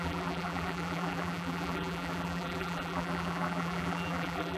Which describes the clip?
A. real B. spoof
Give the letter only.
B